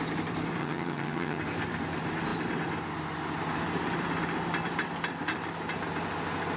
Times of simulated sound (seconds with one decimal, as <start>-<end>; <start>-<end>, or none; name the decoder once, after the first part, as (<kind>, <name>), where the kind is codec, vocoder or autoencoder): 0.6-1.4 (vocoder, HiFi-GAN)